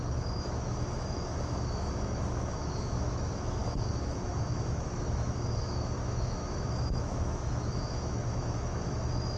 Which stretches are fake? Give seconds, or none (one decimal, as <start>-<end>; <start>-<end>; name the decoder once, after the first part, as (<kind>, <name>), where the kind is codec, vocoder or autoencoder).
0.0-9.4 (autoencoder, DAC-VAE)